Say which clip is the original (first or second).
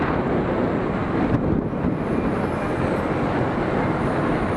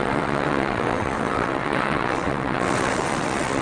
first